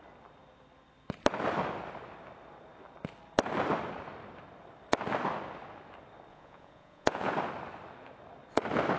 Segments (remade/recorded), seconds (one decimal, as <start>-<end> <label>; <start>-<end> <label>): 0.0-6.3 recorded; 6.3-7.3 remade; 7.3-9.0 recorded